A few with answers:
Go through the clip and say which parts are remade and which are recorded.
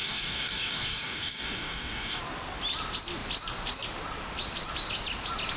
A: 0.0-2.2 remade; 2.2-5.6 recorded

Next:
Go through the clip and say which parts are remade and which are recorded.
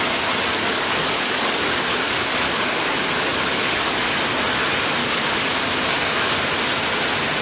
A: 0.0-0.5 recorded; 0.5-2.9 remade; 2.9-3.3 recorded; 3.3-4.1 remade; 4.1-5.0 recorded; 5.0-6.4 remade; 6.4-7.4 recorded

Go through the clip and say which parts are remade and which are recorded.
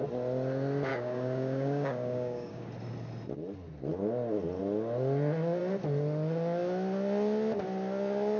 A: 0.0-0.9 recorded; 0.9-2.7 remade; 2.7-8.4 recorded